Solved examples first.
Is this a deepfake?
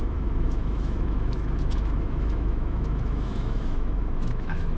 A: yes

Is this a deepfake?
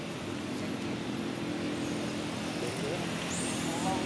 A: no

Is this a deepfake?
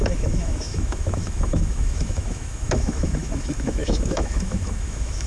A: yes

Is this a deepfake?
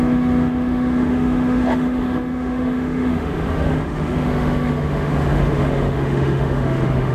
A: yes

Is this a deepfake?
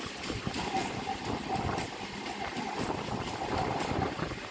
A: no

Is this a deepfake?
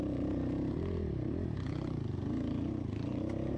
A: no